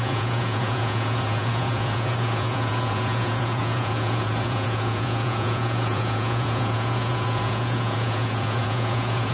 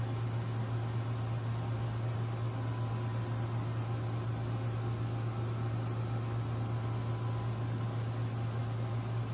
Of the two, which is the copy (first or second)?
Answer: first